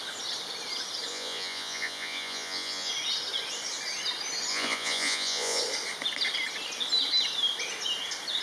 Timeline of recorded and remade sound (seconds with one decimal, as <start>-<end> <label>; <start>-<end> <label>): 0.0-1.1 recorded; 1.1-2.9 remade; 2.9-4.5 recorded; 4.5-5.6 remade; 5.6-8.4 recorded